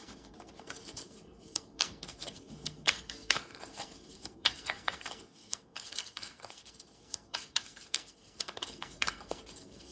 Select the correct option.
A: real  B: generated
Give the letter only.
B